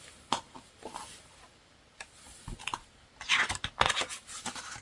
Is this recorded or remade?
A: recorded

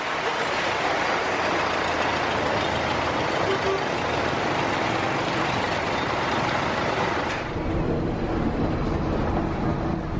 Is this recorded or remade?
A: recorded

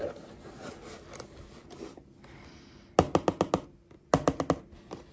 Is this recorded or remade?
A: recorded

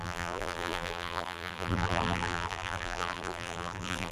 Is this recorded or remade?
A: remade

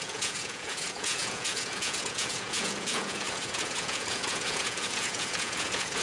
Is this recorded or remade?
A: remade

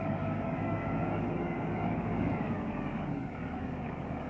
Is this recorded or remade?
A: remade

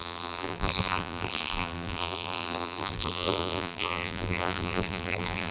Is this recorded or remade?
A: remade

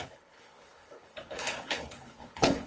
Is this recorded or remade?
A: remade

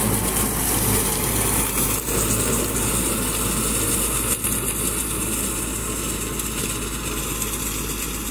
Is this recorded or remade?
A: recorded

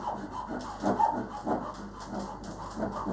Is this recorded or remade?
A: recorded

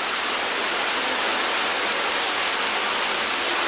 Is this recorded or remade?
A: recorded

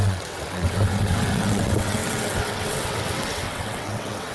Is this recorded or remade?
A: remade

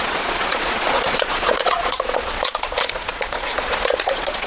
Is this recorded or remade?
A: remade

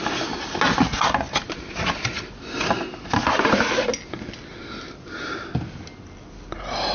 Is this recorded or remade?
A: recorded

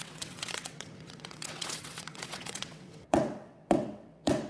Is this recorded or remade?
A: remade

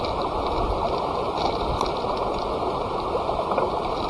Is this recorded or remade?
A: recorded